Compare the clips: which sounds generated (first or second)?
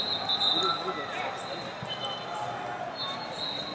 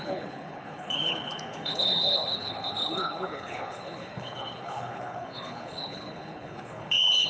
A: second